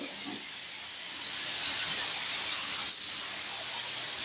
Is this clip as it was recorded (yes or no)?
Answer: yes